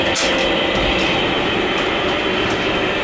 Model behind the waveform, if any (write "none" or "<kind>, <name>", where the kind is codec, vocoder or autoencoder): none